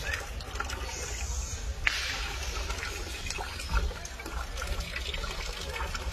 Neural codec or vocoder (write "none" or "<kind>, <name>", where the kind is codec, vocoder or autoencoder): none